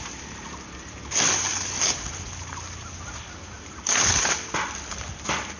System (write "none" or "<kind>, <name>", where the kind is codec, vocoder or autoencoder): none